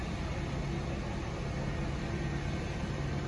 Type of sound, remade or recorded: recorded